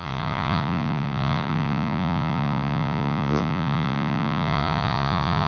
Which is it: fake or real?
fake